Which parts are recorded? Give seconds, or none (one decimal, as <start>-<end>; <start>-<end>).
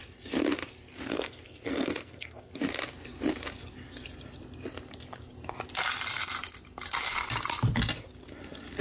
0.0-1.1; 2.5-8.8